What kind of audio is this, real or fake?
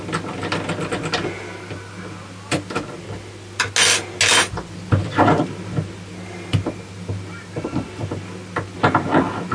real